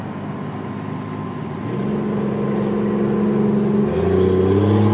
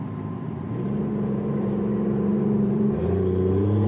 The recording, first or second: first